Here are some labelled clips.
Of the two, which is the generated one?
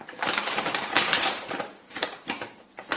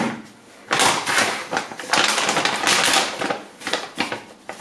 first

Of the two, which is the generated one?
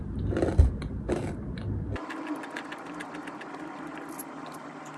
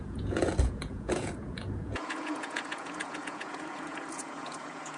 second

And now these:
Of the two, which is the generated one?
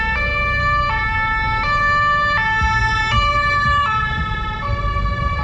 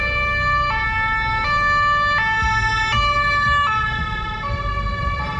first